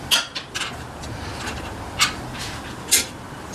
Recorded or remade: recorded